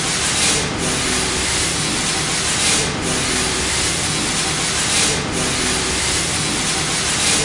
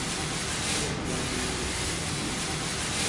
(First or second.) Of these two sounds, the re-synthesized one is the second